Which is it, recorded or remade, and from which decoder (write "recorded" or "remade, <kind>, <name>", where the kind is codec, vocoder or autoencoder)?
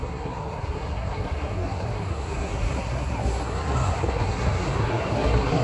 remade, codec, SNAC